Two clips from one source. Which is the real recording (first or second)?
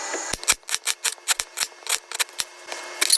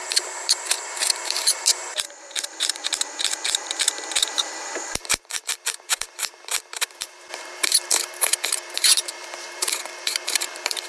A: first